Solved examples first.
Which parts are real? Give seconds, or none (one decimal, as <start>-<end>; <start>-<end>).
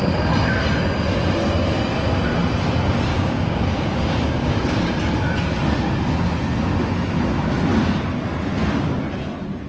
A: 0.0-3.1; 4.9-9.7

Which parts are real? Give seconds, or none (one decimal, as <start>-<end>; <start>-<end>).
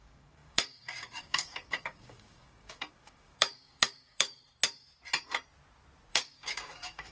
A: 4.4-6.1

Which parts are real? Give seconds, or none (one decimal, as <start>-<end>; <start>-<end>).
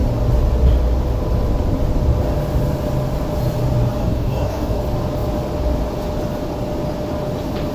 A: 0.0-4.0; 4.8-7.7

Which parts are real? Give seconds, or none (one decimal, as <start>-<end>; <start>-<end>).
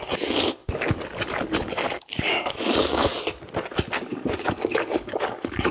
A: 0.6-1.5; 3.1-4.0